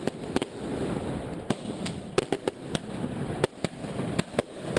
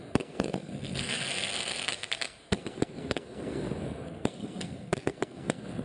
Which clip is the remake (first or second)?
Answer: second